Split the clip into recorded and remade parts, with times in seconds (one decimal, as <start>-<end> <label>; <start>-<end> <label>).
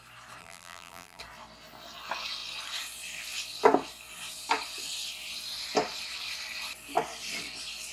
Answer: 0.0-0.4 recorded; 0.4-1.2 remade; 1.2-7.9 recorded